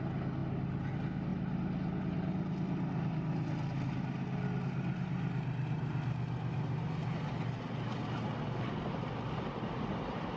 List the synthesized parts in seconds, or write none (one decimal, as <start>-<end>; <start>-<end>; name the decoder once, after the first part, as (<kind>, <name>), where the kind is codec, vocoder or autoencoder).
none